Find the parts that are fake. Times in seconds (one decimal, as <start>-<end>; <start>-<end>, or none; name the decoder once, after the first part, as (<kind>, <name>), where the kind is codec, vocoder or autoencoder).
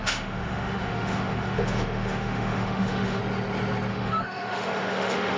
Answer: 0.0-3.2 (autoencoder, DAC-VAE); 3.9-5.4